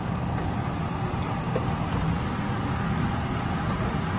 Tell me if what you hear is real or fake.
real